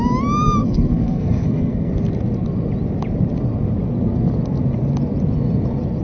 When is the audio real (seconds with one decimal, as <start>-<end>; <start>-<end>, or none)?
0.0-0.6; 1.9-6.0